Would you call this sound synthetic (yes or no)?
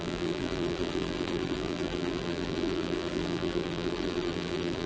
yes